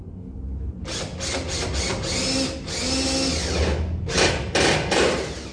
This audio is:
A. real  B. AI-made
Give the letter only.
A